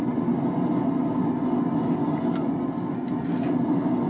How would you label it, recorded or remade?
recorded